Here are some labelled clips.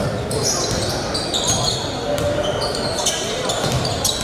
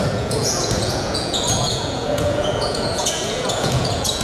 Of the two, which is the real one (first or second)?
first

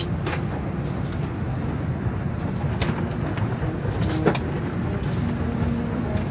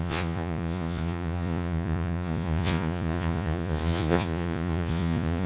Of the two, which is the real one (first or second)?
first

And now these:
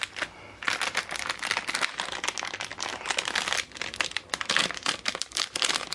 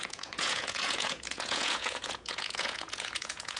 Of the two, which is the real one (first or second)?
first